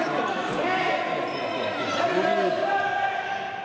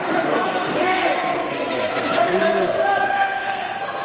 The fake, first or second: second